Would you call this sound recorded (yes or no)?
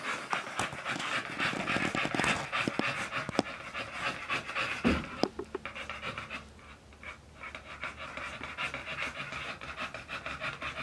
yes